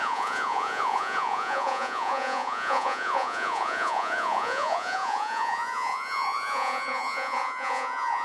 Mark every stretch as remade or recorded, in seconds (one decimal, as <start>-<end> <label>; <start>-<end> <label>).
0.0-8.2 remade